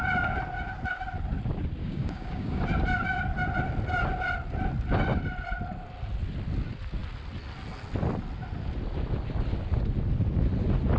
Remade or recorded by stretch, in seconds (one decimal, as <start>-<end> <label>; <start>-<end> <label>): 0.0-1.8 recorded; 1.8-2.6 remade; 2.6-11.0 recorded